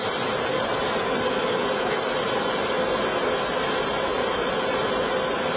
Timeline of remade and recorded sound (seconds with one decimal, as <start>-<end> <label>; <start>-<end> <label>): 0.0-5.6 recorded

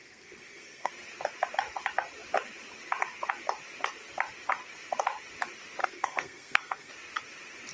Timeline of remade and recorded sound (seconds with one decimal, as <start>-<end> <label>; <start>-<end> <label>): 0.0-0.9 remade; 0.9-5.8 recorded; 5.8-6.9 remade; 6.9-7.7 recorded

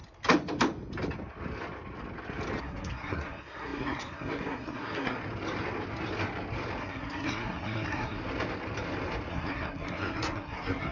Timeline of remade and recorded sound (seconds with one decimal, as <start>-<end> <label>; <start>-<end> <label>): 0.0-2.6 recorded; 2.6-5.2 remade; 5.2-6.8 recorded; 6.8-8.2 remade; 8.2-9.3 recorded; 9.3-10.9 remade

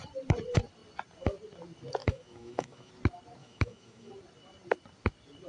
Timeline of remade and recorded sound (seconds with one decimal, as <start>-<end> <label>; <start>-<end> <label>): 0.0-2.0 recorded; 2.0-2.9 remade; 2.9-3.4 recorded; 3.4-4.1 remade; 4.1-5.5 recorded

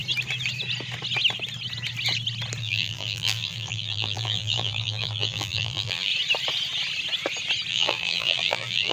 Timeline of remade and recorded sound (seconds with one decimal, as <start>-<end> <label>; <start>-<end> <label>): 0.0-2.6 recorded; 2.6-6.1 remade; 6.1-7.7 recorded; 7.7-8.9 remade